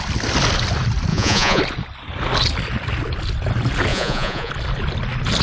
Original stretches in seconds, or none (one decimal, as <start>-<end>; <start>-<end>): 0.0-1.1; 1.6-3.9; 4.5-5.4